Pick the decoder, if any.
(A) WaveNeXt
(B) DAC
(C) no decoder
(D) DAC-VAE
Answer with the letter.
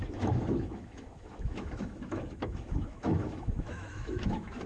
D